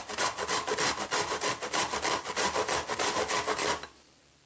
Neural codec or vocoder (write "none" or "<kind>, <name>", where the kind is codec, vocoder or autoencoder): none